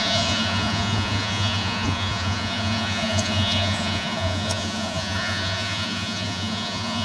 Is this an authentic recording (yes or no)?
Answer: no